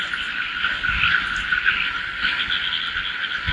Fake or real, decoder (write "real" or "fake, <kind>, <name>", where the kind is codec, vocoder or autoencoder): real